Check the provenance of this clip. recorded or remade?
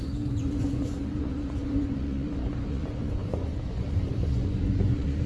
remade